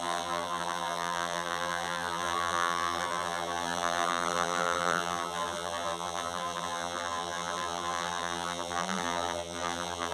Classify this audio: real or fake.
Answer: fake